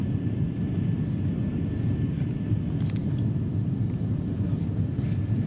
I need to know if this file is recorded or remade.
recorded